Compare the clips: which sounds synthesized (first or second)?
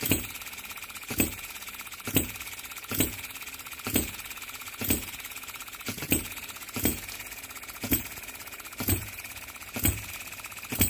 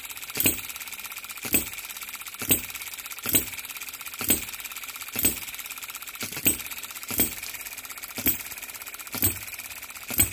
first